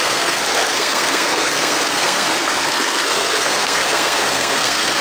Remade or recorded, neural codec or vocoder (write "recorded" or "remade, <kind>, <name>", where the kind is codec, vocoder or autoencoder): remade, codec, SNAC